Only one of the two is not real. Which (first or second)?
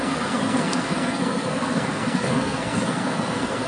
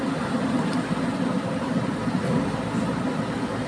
first